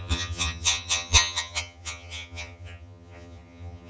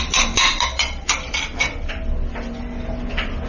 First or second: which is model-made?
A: first